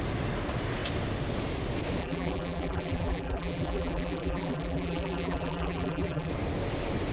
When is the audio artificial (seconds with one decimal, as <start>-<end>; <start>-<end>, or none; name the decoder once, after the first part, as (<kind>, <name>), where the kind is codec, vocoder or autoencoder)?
2.0-6.3 (vocoder, BigVGAN v2)